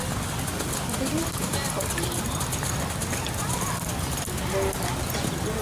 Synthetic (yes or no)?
no